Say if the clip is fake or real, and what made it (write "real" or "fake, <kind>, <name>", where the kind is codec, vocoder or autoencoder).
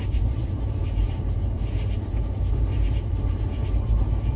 fake, vocoder, BigVGAN v2